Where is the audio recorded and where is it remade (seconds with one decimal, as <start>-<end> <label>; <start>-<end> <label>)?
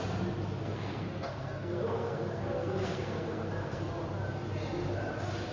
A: 0.0-0.6 recorded; 0.6-3.9 remade; 3.9-5.5 recorded